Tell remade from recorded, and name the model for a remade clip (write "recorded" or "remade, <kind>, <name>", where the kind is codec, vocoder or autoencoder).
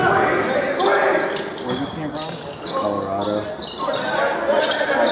recorded